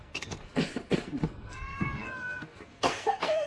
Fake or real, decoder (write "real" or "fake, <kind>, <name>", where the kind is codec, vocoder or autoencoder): fake, codec, SNAC